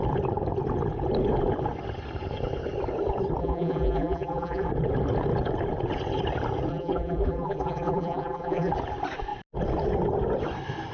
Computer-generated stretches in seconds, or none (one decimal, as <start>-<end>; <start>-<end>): 3.4-4.7; 6.7-8.7